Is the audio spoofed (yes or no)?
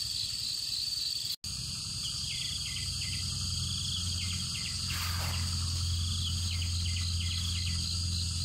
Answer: no